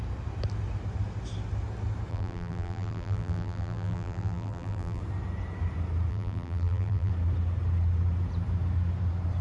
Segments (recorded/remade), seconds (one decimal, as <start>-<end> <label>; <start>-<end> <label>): 0.0-2.1 recorded; 2.1-5.0 remade; 5.0-6.1 recorded; 6.1-7.1 remade; 7.1-9.4 recorded